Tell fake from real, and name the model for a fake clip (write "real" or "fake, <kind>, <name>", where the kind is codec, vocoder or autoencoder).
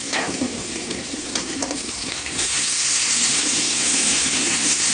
fake, codec, SNAC